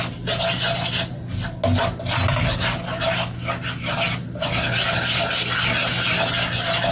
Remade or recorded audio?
recorded